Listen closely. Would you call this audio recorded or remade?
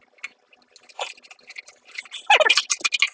recorded